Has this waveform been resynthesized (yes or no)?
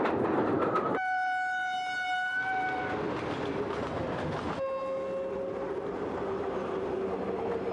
no